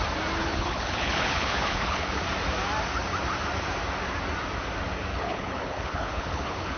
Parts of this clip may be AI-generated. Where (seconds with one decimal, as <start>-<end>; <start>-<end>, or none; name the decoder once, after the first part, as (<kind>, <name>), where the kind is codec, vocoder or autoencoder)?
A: 0.4-2.2 (codec, HILCodec); 5.1-6.8